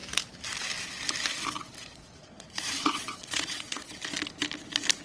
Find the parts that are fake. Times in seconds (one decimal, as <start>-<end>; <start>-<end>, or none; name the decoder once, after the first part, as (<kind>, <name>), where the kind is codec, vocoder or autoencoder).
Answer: 1.8-4.0 (vocoder, Vocos)